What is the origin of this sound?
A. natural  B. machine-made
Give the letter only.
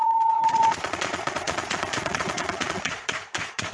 B